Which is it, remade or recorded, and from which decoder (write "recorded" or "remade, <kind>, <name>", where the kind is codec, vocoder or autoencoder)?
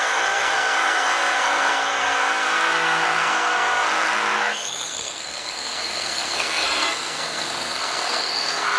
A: remade, codec, SNAC